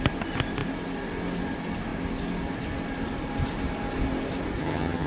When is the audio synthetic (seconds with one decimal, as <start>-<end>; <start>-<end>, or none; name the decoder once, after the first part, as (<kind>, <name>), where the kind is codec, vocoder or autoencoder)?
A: 4.6-5.1 (vocoder, HiFi-GAN)